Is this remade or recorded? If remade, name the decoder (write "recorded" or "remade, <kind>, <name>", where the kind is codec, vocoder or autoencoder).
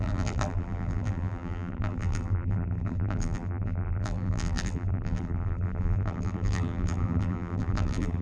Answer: remade, vocoder, BigVGAN v2